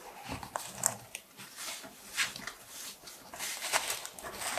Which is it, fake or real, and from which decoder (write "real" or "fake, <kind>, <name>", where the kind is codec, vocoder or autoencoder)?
real